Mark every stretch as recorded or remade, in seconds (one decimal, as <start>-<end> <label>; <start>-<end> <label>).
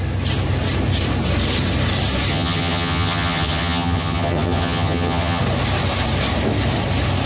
0.0-2.3 recorded; 2.3-5.4 remade; 5.4-7.3 recorded